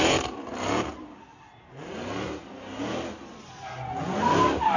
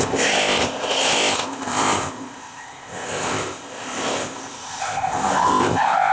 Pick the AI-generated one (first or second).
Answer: second